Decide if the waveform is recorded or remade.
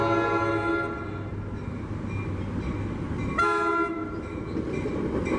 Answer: recorded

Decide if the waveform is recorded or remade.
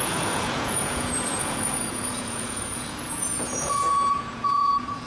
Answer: remade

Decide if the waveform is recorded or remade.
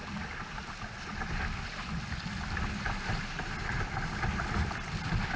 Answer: recorded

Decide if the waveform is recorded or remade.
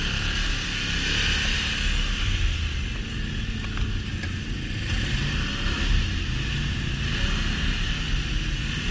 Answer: recorded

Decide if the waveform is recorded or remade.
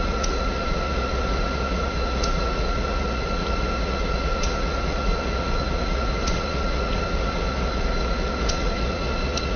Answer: remade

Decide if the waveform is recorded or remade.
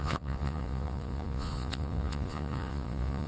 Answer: remade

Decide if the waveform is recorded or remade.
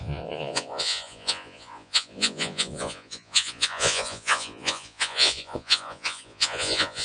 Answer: remade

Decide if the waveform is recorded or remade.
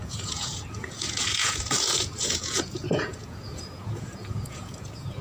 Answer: remade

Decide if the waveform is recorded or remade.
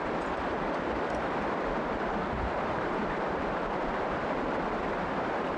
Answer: recorded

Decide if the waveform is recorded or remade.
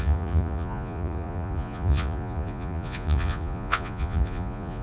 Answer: remade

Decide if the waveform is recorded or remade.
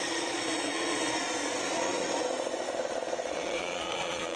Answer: remade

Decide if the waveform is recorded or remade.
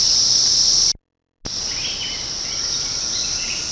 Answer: recorded